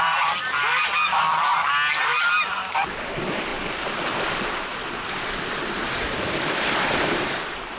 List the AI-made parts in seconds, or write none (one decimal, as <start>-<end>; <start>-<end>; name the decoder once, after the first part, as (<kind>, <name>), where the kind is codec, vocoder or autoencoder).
0.0-1.5 (vocoder, BigVGAN v2); 2.0-7.8